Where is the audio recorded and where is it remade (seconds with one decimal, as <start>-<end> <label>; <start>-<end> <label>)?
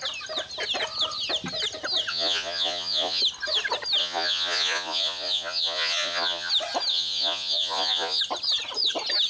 0.0-2.1 recorded; 2.1-3.2 remade; 3.2-4.0 recorded; 4.0-6.5 remade; 6.5-6.9 recorded; 6.9-8.2 remade; 8.2-9.3 recorded